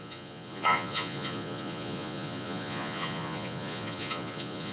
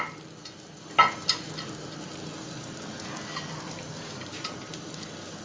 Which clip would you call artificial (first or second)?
first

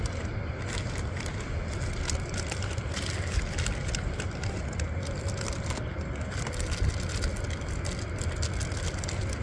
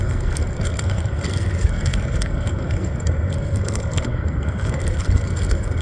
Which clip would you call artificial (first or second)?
second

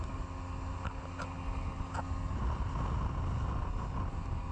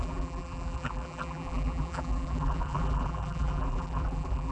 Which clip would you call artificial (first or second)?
second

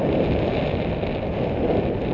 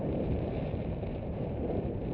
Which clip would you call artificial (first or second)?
second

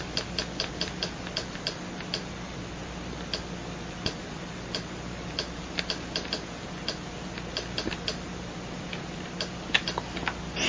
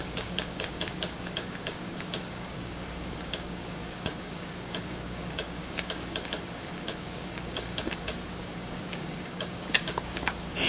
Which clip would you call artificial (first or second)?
second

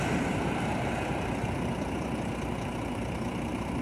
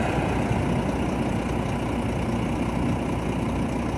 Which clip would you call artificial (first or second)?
first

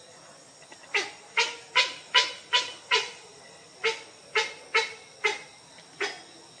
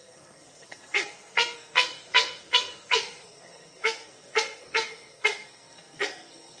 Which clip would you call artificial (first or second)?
second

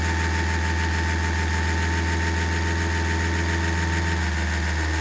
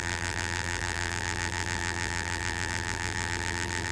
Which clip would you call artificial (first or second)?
second